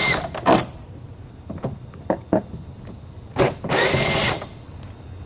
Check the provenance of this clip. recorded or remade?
recorded